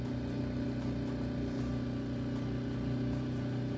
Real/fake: real